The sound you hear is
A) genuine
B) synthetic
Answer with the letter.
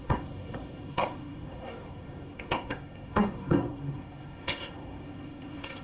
B